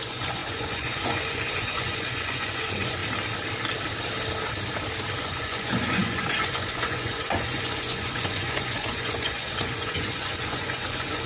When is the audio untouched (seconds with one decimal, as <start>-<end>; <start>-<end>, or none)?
3.0-5.2